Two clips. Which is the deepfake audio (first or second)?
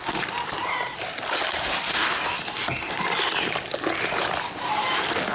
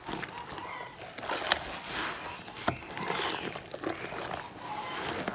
first